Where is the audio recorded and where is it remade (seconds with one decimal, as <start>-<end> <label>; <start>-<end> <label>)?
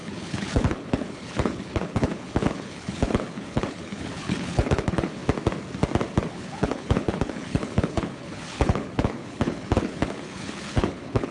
0.0-5.2 remade; 5.2-6.3 recorded; 6.3-11.3 remade